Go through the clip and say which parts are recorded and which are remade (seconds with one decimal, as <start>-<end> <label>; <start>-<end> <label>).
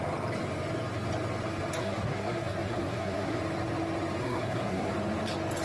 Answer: 0.0-1.8 recorded; 1.8-3.4 remade; 3.4-4.2 recorded; 4.2-4.9 remade; 4.9-5.6 recorded